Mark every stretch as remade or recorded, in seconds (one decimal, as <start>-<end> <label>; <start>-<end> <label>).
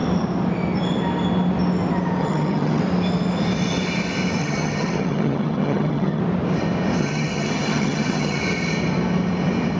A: 0.0-2.2 recorded; 2.2-2.8 remade; 2.8-4.4 recorded; 4.4-6.2 remade; 6.2-7.0 recorded; 7.0-8.4 remade; 8.4-9.8 recorded